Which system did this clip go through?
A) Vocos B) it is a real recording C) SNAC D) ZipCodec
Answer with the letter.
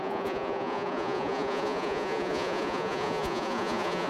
A